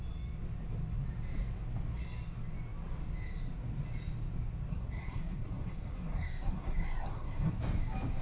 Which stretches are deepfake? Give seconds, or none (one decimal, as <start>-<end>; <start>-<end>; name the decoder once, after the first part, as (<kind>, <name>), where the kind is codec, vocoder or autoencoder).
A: 4.7-7.5 (codec, SNAC)